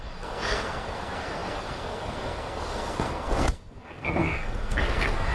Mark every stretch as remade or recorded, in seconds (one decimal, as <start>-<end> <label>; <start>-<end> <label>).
0.0-5.3 remade